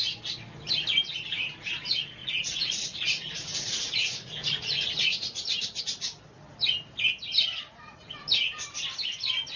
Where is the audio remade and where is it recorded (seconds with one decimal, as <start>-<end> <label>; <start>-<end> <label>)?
0.0-2.2 recorded; 2.2-5.8 remade; 5.8-7.5 recorded; 7.5-8.0 remade; 8.0-9.6 recorded